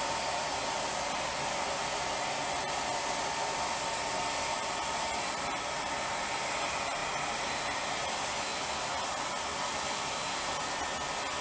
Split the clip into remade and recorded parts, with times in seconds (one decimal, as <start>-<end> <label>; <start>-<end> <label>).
0.0-11.4 recorded